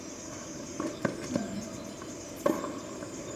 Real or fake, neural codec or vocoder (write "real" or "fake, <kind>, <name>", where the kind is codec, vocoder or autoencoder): real